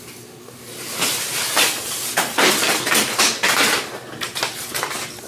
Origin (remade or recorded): recorded